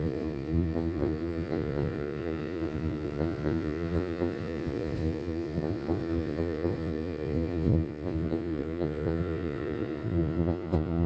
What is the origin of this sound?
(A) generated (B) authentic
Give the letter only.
A